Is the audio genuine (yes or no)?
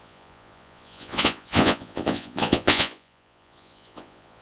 no